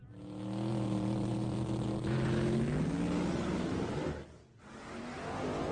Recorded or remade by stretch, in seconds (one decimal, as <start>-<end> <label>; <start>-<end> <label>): 0.0-5.7 recorded